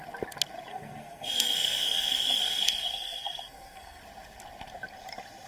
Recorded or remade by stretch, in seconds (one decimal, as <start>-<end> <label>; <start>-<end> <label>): 0.0-0.7 recorded; 0.7-4.0 remade; 4.0-5.5 recorded